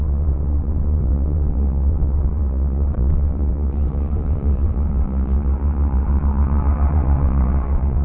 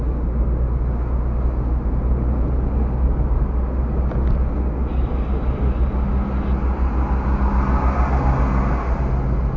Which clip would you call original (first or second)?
second